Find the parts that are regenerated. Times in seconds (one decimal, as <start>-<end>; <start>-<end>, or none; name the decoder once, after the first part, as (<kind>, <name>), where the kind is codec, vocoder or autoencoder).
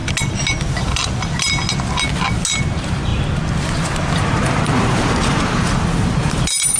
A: 2.6-3.1 (vocoder, BigVGAN v2); 4.1-6.8